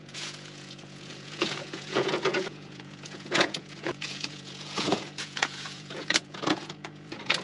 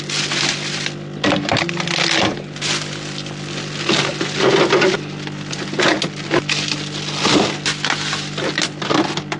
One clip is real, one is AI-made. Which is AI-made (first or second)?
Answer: first